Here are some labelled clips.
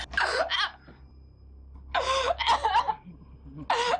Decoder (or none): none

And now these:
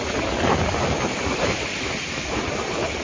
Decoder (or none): none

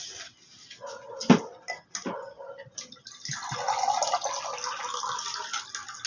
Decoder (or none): none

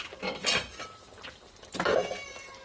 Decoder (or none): none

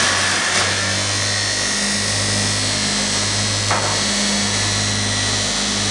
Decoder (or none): none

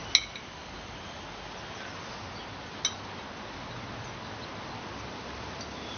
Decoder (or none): none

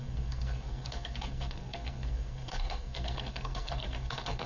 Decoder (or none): codec, SNAC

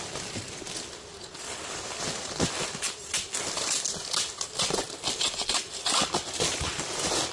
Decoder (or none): none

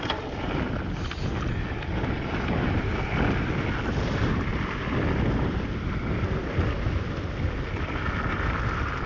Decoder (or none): none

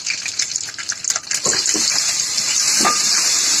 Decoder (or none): none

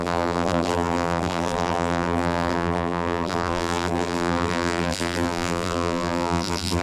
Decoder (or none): vocoder, BigVGAN v2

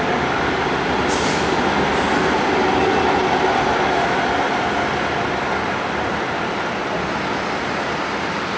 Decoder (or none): none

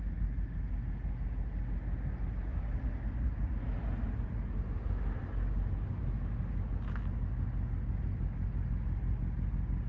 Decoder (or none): none